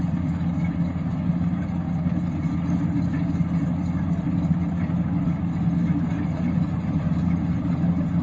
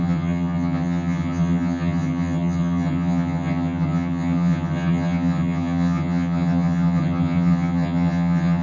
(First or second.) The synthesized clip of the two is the second